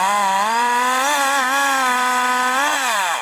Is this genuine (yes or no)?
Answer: no